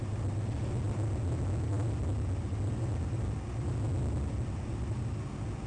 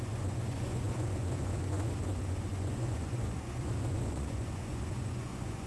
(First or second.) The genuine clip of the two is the first